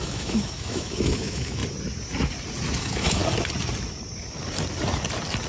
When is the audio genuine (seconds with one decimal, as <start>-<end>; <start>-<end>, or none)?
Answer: 1.6-2.8; 3.2-5.5

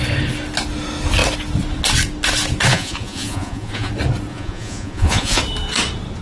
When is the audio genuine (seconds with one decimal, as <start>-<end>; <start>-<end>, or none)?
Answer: 0.0-2.7; 3.9-4.3; 5.4-6.2

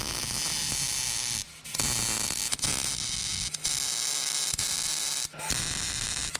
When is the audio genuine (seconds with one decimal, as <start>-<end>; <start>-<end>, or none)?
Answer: 0.0-6.4

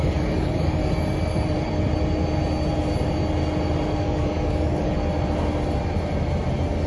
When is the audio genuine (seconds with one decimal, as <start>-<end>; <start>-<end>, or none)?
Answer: 0.8-4.0; 4.9-6.9

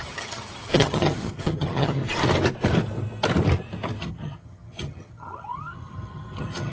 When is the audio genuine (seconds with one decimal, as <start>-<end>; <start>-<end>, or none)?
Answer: 2.0-4.0

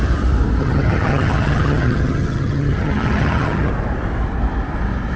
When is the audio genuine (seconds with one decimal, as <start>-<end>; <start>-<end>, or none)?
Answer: 0.0-0.6; 3.7-5.2

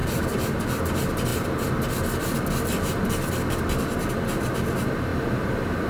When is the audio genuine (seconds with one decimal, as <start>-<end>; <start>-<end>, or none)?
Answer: 0.8-5.1

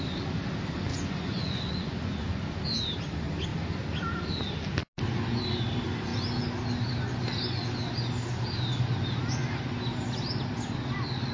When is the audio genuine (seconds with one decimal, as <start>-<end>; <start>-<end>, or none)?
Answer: 0.0-0.9; 2.4-11.3